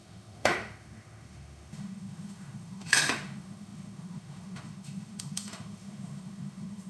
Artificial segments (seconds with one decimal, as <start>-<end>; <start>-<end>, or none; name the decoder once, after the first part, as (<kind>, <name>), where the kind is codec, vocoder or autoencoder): 0.0-6.9 (autoencoder, DAC-VAE)